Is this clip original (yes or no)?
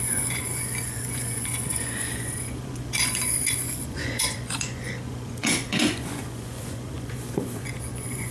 no